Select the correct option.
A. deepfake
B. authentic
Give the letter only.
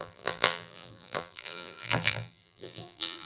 A